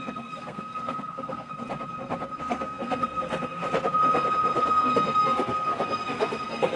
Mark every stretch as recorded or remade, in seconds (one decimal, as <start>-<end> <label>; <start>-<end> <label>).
0.0-1.5 remade; 1.5-2.4 recorded; 2.4-3.6 remade; 3.6-4.7 recorded; 4.7-6.8 remade